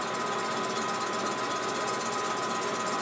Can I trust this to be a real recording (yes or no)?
yes